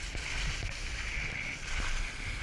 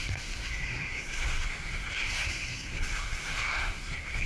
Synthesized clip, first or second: second